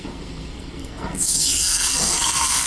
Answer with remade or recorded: remade